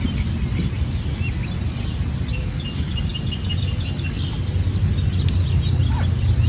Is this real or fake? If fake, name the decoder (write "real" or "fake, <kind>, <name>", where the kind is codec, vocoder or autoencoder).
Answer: real